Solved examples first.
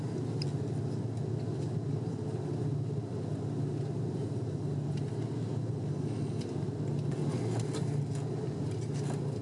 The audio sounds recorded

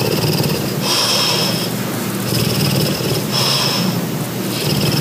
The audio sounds recorded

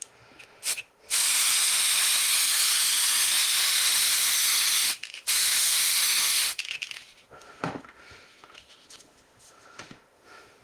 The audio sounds remade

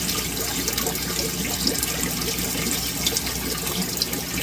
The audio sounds recorded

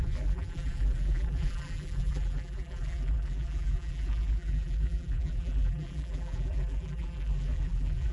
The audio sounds remade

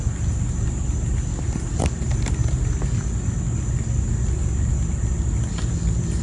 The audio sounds recorded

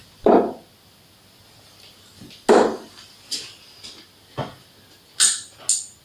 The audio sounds recorded